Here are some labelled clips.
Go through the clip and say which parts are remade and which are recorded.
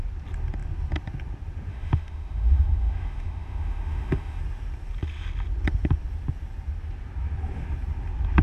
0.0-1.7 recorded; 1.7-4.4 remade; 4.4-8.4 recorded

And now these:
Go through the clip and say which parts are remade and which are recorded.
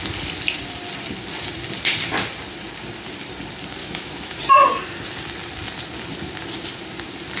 0.0-3.8 recorded; 3.8-4.4 remade; 4.4-7.4 recorded